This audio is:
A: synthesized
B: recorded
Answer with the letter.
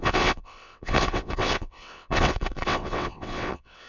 A